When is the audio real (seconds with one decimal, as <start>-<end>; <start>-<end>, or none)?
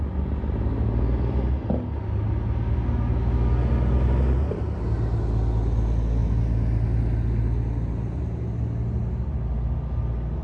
0.0-10.4